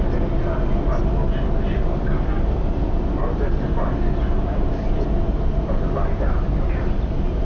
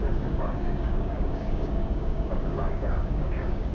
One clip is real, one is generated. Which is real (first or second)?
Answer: first